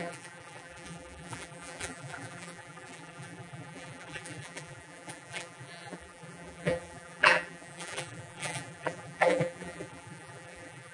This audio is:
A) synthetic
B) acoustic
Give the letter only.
A